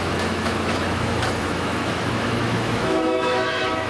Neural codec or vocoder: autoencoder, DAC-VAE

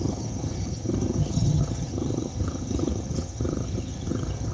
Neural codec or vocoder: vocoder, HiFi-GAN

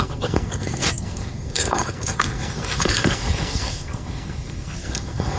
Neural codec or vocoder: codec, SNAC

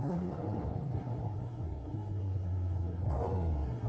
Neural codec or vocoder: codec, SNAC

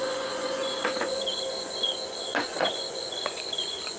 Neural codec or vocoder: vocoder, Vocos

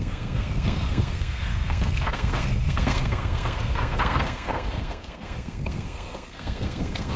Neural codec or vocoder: codec, SNAC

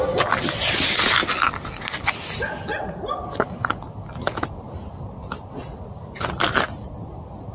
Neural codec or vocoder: none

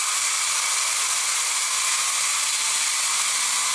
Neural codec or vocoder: none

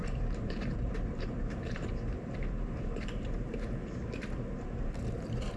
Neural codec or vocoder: vocoder, BigVGAN v2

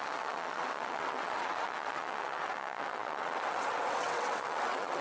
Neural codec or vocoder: vocoder, WaveNeXt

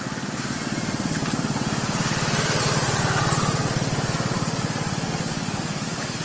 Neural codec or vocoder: none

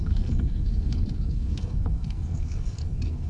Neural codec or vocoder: codec, SNAC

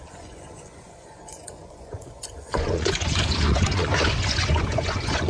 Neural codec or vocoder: vocoder, Vocos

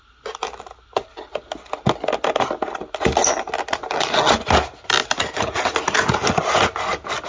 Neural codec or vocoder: none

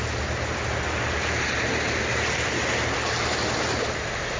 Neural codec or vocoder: none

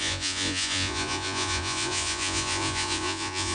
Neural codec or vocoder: vocoder, Vocos